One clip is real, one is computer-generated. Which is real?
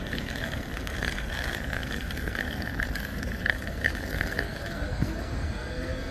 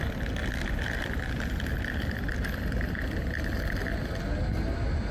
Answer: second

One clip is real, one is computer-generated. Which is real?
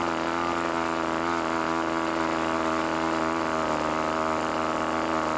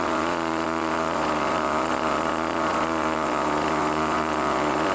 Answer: first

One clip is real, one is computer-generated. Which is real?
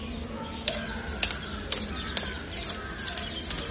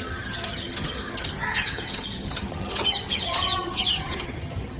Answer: first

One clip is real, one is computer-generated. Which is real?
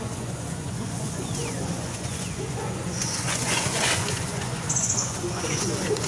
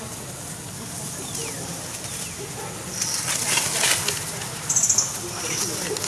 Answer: second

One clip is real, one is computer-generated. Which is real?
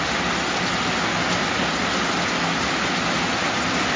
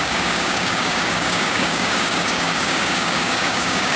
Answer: first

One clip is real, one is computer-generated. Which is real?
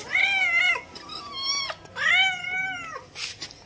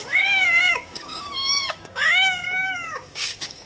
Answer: first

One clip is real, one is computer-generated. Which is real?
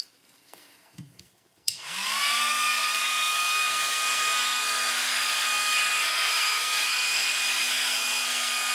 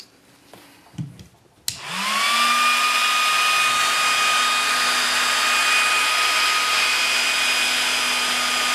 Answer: second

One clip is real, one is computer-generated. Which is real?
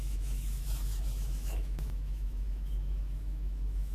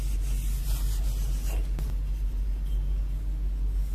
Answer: second